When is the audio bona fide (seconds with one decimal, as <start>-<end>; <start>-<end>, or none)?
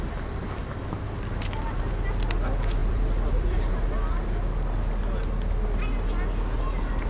0.0-2.8; 3.7-7.1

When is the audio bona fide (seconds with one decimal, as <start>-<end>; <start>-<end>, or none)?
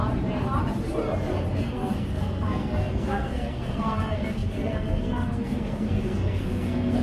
0.0-1.5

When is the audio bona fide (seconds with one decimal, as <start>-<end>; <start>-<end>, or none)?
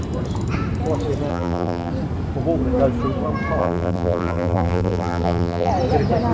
0.0-1.3; 1.9-3.6; 5.7-6.3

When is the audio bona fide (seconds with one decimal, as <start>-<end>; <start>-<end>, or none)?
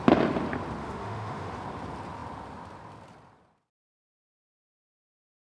0.0-0.8; 1.5-5.5